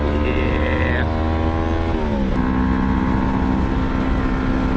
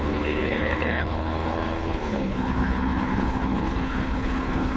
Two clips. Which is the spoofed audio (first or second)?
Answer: second